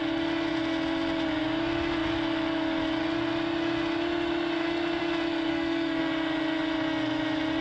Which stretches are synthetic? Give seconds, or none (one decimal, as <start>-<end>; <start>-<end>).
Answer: 5.5-6.0